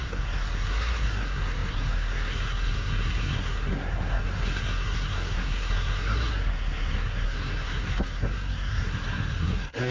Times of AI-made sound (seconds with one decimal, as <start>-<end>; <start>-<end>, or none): 0.0-9.9